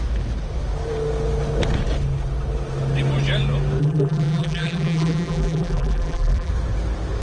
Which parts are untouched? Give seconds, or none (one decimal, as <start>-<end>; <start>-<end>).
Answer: 0.0-3.8; 6.5-7.2